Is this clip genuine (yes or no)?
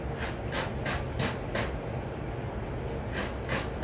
yes